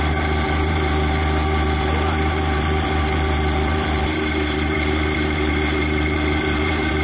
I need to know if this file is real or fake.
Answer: fake